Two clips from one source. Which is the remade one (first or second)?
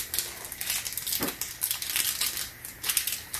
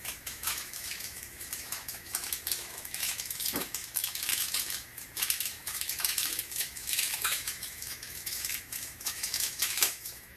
second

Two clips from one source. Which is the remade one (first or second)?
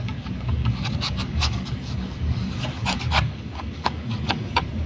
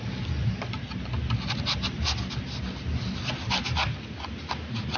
first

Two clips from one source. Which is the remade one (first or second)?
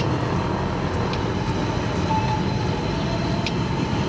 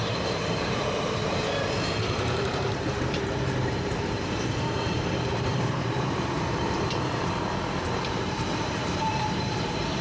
second